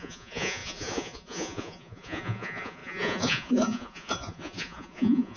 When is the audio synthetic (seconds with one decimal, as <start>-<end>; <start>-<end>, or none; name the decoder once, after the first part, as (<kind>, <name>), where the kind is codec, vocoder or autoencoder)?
0.0-5.4 (vocoder, Vocos)